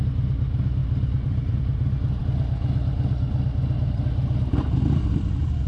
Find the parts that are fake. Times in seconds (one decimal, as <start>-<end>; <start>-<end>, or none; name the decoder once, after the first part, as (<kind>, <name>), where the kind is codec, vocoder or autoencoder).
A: 0.8-1.6 (vocoder, BigVGAN v2)